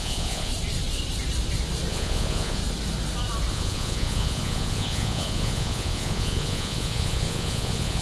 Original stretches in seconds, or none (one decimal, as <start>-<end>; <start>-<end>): 0.5-1.9; 2.6-3.5